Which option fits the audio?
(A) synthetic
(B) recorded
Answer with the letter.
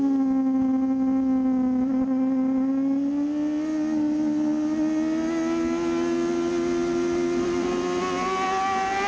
B